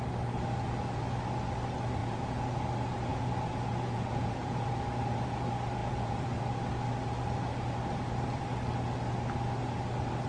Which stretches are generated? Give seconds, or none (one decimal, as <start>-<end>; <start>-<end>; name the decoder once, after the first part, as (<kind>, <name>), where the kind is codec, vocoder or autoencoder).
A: 2.0-2.6 (vocoder, Vocos); 3.1-4.7; 5.8-6.4